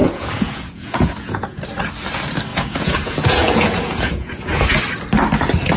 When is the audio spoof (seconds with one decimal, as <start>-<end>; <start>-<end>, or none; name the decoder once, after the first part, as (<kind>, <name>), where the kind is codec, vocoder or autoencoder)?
0.0-1.6 (vocoder, Vocos); 2.5-4.8